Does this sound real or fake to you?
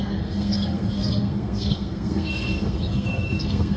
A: fake